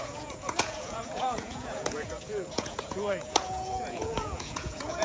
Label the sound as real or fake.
fake